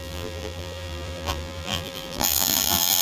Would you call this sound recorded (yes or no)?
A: no